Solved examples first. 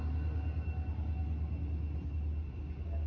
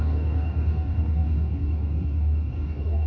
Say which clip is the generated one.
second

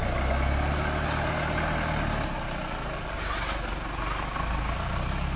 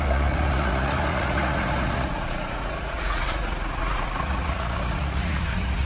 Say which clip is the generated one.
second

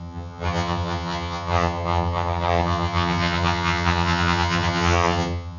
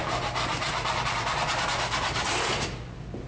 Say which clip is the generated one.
first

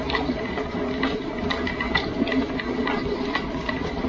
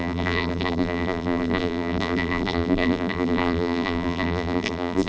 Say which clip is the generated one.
second